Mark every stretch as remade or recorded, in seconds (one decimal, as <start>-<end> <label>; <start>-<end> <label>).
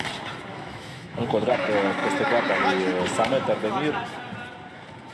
0.0-0.5 recorded; 0.5-1.5 remade; 1.5-5.1 recorded